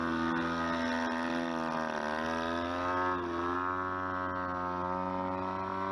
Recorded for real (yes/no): yes